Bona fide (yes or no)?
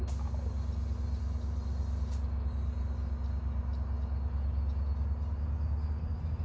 yes